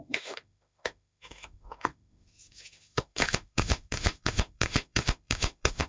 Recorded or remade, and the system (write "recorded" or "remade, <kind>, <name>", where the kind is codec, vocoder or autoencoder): remade, autoencoder, DAC-VAE